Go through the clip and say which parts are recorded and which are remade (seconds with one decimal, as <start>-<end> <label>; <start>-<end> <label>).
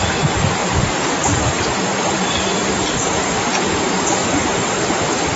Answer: 0.0-0.6 recorded; 0.6-3.8 remade; 3.8-4.2 recorded; 4.2-4.9 remade; 4.9-5.4 recorded